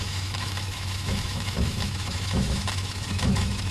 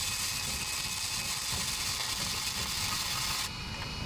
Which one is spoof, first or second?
first